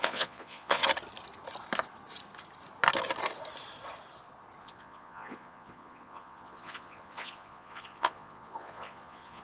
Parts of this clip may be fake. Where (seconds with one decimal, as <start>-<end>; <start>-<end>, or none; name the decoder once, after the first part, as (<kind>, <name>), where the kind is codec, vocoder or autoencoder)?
0.0-0.8 (vocoder, Vocos); 4.6-9.4